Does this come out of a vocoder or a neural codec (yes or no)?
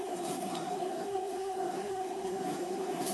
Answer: yes